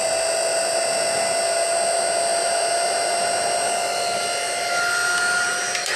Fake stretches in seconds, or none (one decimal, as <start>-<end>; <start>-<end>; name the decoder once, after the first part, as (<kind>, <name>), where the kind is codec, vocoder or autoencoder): none